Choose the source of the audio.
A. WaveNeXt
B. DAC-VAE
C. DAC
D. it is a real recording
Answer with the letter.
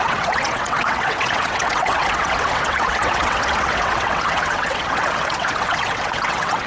A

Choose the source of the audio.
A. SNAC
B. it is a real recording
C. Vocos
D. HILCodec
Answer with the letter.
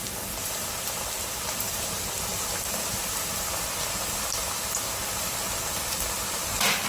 B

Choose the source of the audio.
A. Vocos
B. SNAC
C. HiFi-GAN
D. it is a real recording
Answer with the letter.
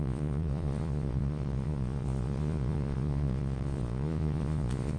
A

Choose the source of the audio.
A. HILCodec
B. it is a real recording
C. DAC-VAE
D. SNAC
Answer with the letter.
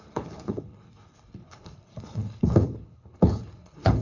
A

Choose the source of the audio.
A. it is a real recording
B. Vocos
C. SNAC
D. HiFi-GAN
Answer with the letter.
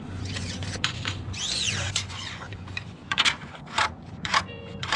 B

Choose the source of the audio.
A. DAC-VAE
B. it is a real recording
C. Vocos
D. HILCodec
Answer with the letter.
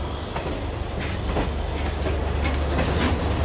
B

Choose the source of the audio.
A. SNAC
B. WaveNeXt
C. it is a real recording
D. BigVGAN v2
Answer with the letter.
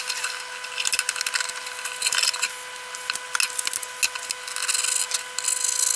C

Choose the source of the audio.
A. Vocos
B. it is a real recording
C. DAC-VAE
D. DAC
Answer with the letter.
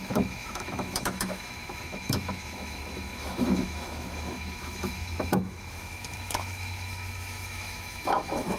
C